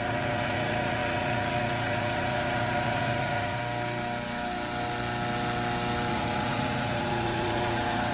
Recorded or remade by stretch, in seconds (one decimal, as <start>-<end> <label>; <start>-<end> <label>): 0.0-3.6 remade; 3.6-6.1 recorded; 6.1-8.1 remade